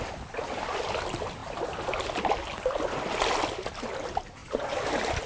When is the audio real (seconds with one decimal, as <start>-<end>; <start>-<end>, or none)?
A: 0.0-5.3